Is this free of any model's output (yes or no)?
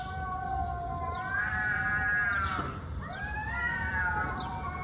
yes